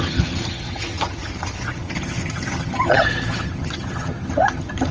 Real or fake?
fake